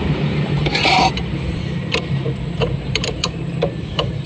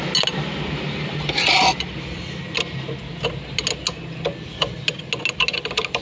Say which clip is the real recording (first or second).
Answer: second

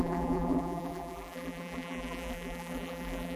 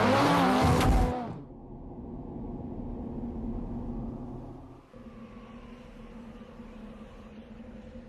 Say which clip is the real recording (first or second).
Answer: second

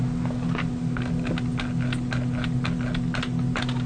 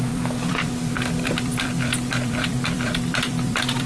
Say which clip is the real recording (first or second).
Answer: first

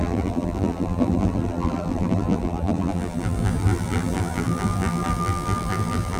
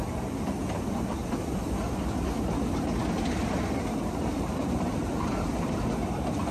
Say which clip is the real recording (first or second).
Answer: second